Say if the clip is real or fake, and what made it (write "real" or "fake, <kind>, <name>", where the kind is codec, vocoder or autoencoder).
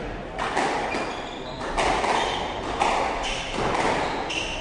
real